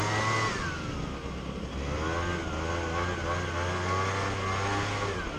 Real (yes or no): yes